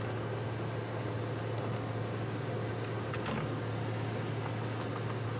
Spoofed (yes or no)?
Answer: no